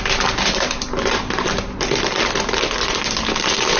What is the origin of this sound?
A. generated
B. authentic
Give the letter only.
B